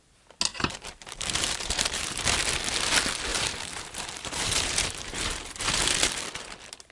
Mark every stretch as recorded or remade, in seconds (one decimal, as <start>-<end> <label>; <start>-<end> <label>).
0.0-0.5 recorded; 0.5-2.4 remade; 2.4-3.3 recorded; 3.3-5.8 remade; 5.8-6.9 recorded